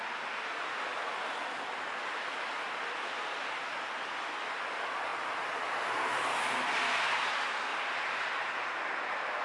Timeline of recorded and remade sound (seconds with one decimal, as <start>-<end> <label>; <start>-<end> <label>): 0.0-7.7 recorded; 7.7-9.4 remade